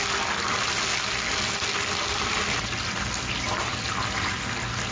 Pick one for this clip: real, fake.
real